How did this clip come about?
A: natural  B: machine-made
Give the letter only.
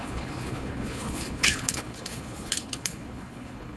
B